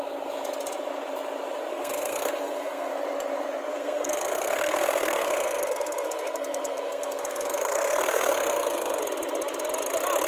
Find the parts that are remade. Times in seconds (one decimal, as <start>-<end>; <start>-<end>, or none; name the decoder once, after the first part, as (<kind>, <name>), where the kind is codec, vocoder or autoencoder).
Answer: 1.7-2.9 (codec, SNAC); 3.7-9.0